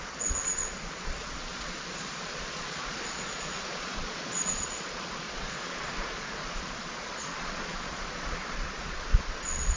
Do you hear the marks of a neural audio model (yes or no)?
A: yes